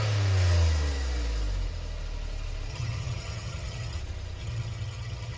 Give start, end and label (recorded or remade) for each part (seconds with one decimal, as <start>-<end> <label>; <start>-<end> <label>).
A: 0.0-2.7 recorded; 2.7-4.0 remade; 4.0-4.4 recorded; 4.4-5.4 remade